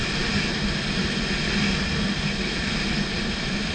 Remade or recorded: recorded